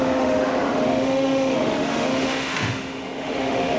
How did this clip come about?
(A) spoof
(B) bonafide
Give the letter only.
A